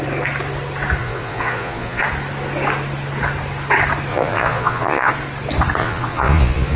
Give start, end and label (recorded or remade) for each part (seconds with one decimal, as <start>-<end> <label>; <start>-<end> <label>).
0.0-1.0 recorded; 1.0-2.0 remade; 2.0-4.1 recorded; 4.1-5.1 remade; 5.1-5.8 recorded; 5.8-6.8 remade